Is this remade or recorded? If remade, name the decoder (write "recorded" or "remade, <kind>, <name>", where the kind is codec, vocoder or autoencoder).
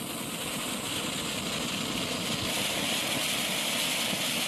recorded